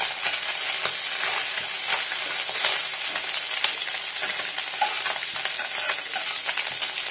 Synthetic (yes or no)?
no